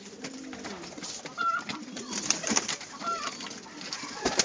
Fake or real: fake